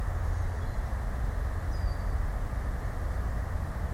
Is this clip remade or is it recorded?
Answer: recorded